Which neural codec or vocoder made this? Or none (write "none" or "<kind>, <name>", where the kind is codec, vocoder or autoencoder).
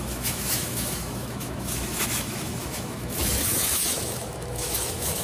autoencoder, DAC-VAE